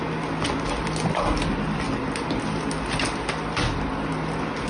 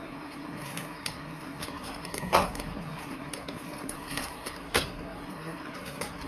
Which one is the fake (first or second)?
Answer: second